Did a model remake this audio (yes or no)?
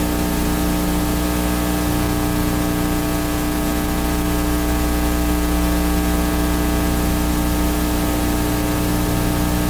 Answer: no